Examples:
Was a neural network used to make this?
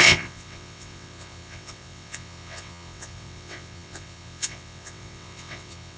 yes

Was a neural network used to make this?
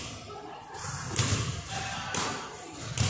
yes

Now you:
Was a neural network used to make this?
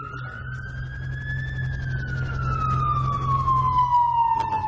no